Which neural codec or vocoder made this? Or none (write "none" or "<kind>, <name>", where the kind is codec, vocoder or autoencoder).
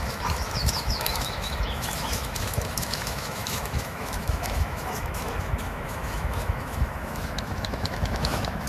autoencoder, DAC-VAE